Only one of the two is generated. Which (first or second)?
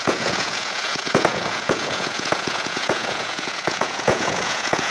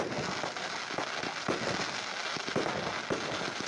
first